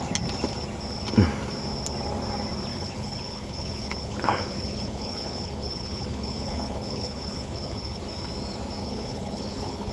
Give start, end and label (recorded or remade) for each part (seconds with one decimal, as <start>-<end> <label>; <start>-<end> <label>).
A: 0.0-2.7 recorded; 2.7-8.0 remade; 8.0-8.8 recorded; 8.8-9.9 remade